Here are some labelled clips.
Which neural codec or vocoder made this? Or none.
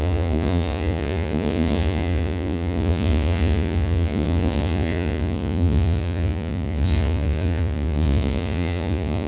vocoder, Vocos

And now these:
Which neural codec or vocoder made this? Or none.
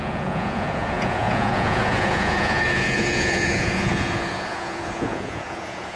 vocoder, Vocos